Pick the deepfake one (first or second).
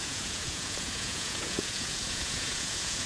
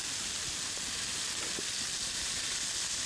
first